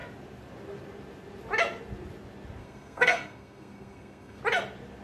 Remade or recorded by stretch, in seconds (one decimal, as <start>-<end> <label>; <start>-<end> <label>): 0.0-2.6 recorded; 2.6-4.4 remade; 4.4-5.0 recorded